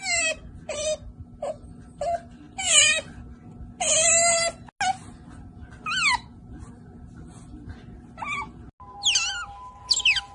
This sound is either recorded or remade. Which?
recorded